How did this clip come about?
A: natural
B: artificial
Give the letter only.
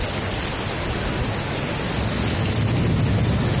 A